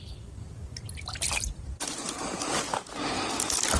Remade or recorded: recorded